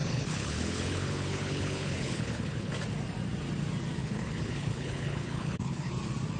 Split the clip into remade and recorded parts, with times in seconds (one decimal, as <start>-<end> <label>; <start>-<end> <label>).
0.0-2.7 remade; 2.7-4.0 recorded; 4.0-5.9 remade; 5.9-6.4 recorded